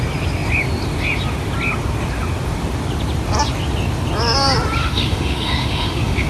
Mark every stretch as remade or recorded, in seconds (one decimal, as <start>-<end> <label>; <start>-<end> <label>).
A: 0.0-4.8 recorded; 4.8-6.3 remade